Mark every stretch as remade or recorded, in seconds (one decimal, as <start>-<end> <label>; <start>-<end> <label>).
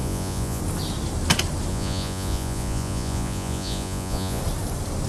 0.0-0.6 remade; 0.6-1.7 recorded; 1.7-4.4 remade; 4.4-5.1 recorded